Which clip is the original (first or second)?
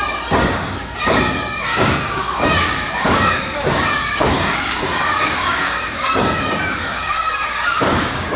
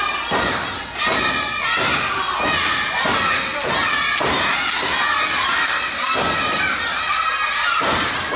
second